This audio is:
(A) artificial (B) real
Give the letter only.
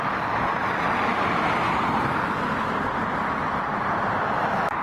B